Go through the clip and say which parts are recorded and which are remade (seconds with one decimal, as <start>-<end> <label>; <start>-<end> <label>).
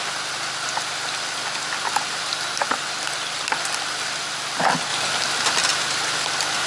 0.0-6.7 recorded